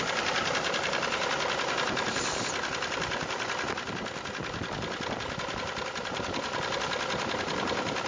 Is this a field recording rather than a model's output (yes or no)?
yes